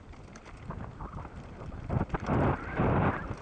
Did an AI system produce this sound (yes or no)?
no